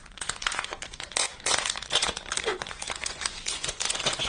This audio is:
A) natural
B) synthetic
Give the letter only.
B